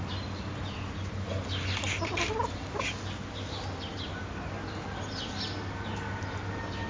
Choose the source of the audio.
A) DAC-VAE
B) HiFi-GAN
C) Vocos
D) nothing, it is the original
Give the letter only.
D